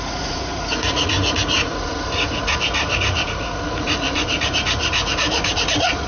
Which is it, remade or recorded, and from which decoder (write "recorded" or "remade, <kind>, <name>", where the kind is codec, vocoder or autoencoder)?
remade, vocoder, Vocos